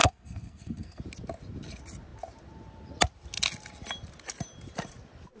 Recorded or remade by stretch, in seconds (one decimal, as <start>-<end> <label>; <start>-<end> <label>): 0.0-1.0 remade; 1.0-5.4 recorded